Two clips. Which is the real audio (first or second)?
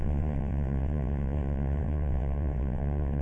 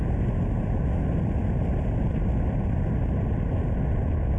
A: second